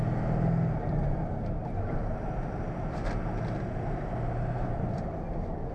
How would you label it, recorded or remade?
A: recorded